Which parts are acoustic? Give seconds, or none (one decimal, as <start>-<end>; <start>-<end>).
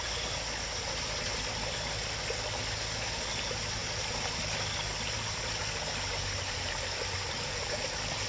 0.0-8.3